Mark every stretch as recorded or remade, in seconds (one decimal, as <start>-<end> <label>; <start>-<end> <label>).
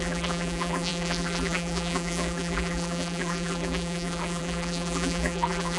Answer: 0.0-5.8 remade